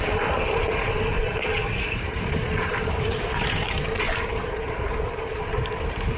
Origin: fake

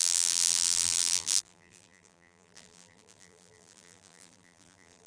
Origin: fake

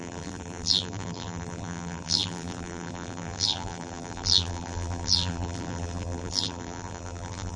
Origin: fake